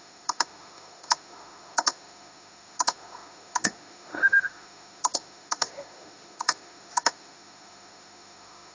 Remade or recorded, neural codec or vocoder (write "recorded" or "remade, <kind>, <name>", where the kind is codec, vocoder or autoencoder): remade, autoencoder, DAC-VAE